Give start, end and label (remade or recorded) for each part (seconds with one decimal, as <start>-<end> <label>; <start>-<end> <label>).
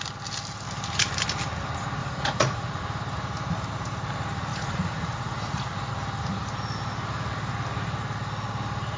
0.0-2.0 recorded; 2.0-2.8 remade; 2.8-4.5 recorded; 4.5-5.9 remade; 5.9-9.0 recorded